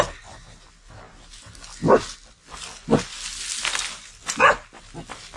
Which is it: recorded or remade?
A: recorded